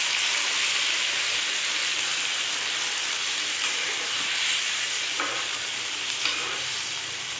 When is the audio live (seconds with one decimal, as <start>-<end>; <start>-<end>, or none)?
0.0-7.4